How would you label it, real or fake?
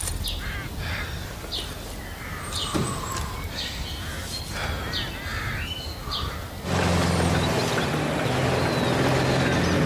real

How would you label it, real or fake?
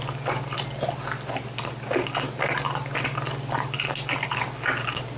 real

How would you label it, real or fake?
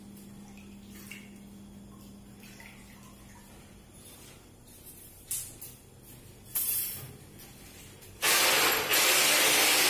real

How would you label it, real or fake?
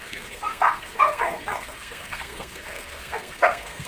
fake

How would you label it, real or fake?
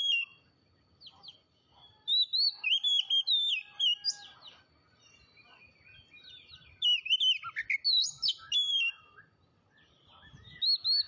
real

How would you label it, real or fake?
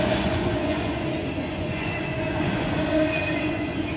fake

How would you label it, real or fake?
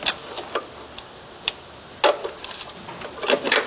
real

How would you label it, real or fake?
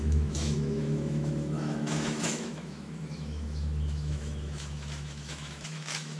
fake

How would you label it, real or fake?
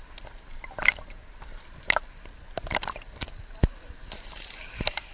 real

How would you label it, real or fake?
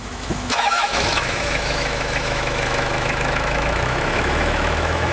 fake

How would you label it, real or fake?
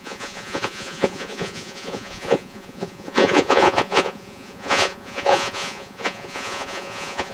fake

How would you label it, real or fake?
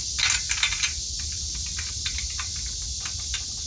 real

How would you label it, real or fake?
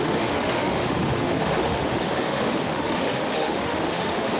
fake